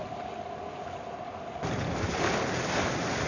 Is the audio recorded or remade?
recorded